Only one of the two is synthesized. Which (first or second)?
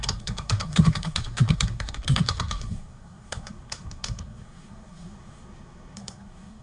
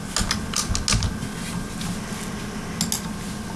first